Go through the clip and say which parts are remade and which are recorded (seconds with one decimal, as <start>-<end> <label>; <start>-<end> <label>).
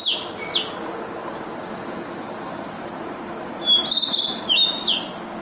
0.0-1.2 recorded; 1.2-4.4 remade; 4.4-5.4 recorded